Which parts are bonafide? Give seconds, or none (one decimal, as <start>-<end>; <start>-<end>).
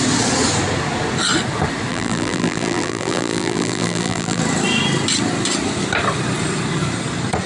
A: 0.0-1.9; 4.4-7.5